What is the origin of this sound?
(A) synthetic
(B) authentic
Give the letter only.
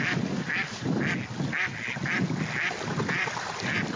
B